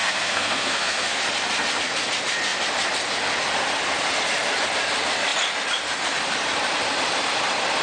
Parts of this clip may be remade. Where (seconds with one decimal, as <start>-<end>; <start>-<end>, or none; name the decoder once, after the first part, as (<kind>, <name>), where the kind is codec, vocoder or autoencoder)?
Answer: 0.0-1.2 (codec, SNAC)